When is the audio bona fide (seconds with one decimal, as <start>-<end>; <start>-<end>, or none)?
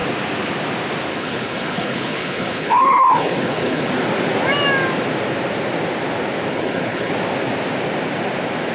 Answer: 0.0-1.1; 3.9-6.5; 7.1-8.7